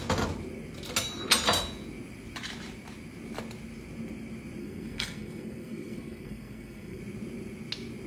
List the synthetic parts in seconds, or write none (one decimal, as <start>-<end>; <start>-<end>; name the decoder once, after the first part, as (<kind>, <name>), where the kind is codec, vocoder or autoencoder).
4.6-7.0 (codec, SNAC)